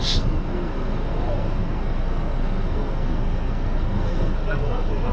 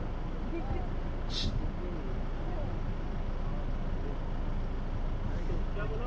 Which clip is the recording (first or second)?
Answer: second